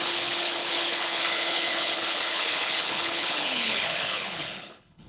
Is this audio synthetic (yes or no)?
yes